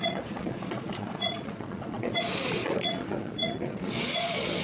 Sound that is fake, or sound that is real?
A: fake